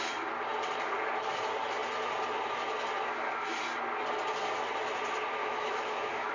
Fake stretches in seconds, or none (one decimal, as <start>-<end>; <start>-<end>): 5.4-6.3

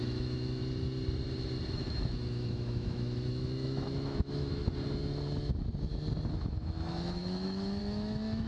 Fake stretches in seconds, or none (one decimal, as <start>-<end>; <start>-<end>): 0.0-0.6; 1.7-4.6; 6.3-8.5

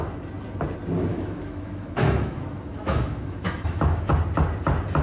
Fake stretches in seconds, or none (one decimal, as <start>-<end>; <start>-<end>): 1.1-4.1

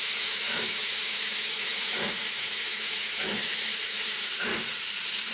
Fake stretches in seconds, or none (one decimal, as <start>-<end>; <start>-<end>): 0.0-4.5

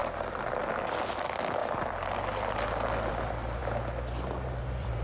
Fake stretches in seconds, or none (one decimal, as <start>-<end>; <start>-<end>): none

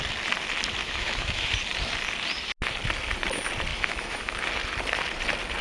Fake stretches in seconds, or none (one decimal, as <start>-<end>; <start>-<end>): 0.8-1.5; 3.7-4.4

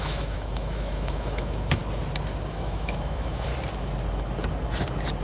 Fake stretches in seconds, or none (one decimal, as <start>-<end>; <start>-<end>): 0.0-1.8; 2.5-3.5

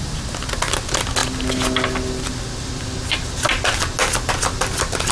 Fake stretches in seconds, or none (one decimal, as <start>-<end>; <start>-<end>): none